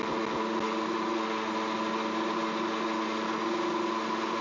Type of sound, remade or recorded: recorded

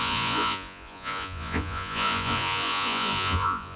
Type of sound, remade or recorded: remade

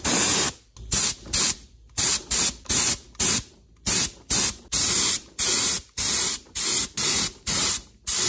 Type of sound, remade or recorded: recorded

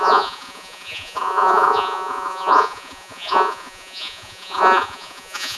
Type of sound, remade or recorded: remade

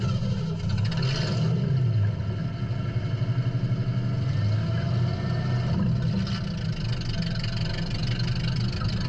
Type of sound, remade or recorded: recorded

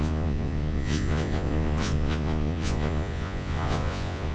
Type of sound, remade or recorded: remade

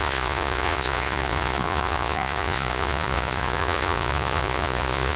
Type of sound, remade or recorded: remade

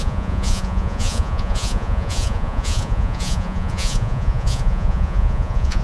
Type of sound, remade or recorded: remade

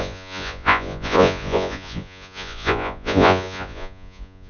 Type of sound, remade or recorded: remade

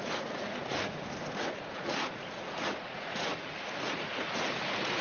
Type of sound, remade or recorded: remade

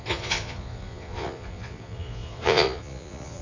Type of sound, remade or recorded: remade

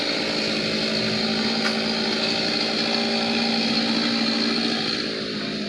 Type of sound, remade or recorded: recorded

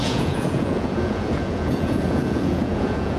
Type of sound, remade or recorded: remade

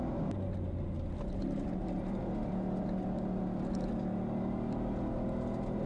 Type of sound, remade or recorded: recorded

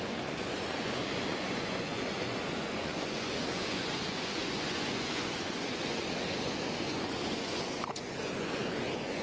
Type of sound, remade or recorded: remade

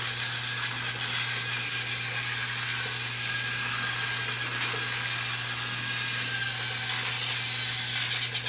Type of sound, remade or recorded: recorded